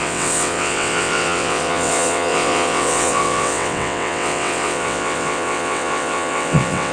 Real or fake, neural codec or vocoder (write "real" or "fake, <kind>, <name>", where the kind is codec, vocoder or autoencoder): fake, vocoder, WaveNeXt